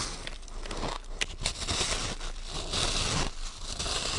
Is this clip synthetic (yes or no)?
no